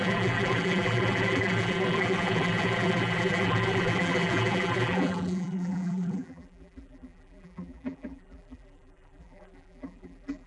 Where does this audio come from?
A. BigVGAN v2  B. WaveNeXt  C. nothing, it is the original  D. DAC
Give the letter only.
A